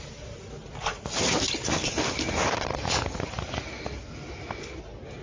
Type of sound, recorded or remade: recorded